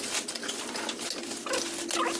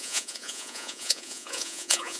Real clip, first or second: first